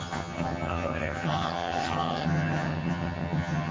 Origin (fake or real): fake